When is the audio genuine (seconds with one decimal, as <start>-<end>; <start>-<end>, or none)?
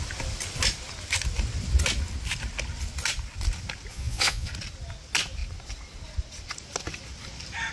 0.0-3.9; 4.5-7.7